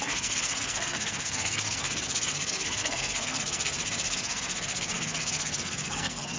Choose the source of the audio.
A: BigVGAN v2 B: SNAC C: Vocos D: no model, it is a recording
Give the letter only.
B